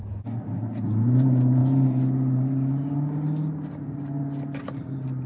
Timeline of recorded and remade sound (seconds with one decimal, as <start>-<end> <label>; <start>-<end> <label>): 0.0-5.3 recorded